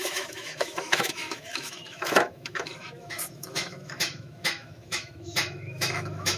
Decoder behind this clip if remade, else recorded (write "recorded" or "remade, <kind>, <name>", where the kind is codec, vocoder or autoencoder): remade, autoencoder, DAC-VAE